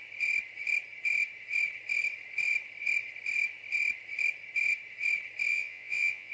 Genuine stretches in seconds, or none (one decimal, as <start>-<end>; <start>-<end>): 0.0-5.5